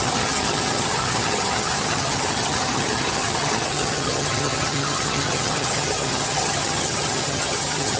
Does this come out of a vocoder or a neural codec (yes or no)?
yes